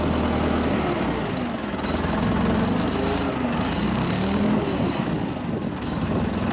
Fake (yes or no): no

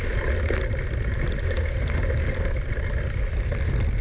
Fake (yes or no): no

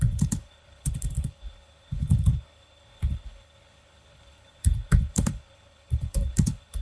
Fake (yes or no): yes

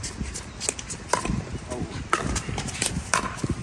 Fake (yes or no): no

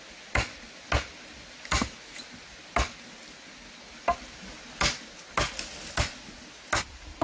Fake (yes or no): no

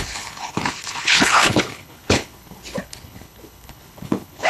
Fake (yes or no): yes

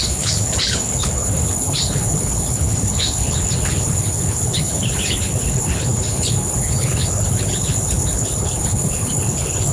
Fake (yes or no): yes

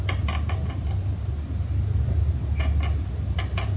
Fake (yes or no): no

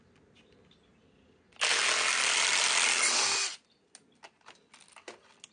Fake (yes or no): no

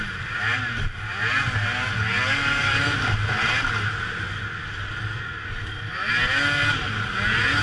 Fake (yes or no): no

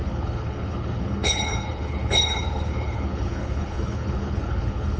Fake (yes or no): yes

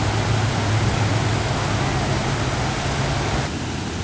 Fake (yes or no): no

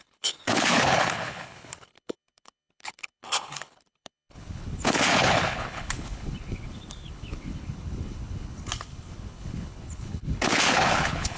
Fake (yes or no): yes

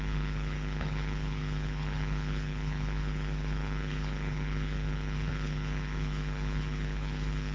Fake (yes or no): yes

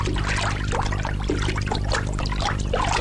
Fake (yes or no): no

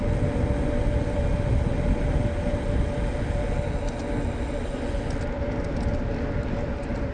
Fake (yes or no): no